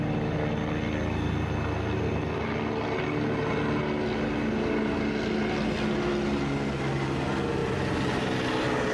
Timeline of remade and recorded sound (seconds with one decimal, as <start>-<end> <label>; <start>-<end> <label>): 0.0-7.6 recorded; 7.6-8.2 remade; 8.2-8.9 recorded